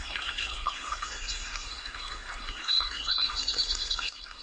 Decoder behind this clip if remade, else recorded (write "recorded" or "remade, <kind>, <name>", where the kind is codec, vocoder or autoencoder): remade, codec, SNAC